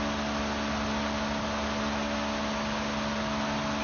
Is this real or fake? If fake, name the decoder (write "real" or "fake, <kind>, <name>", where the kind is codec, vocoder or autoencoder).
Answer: real